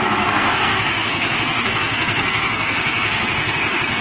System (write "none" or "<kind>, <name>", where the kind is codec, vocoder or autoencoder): codec, SNAC